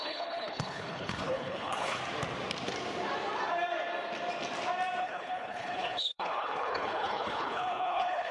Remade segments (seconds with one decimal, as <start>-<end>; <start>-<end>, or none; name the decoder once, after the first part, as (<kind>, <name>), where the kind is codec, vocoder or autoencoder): 0.0-2.0 (codec, HILCodec); 5.0-8.3